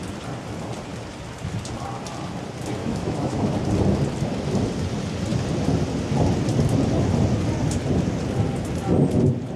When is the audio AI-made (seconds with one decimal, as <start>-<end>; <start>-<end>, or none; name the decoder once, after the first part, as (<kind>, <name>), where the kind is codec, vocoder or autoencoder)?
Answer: 2.8-3.5 (autoencoder, DAC-VAE)